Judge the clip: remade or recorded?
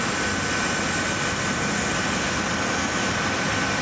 recorded